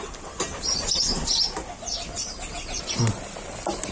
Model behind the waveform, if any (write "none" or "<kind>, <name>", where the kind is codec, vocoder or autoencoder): none